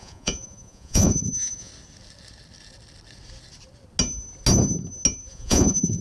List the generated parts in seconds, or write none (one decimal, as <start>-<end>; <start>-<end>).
0.0-1.7; 5.3-6.0